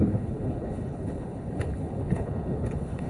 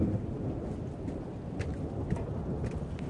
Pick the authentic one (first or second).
second